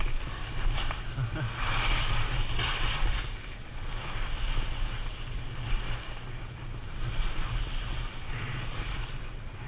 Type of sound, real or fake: real